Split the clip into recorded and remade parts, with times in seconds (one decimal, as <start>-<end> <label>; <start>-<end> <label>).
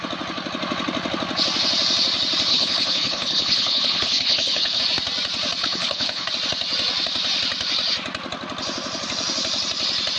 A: 0.0-2.5 recorded; 2.5-4.8 remade; 4.8-5.6 recorded; 5.6-6.3 remade; 6.3-10.2 recorded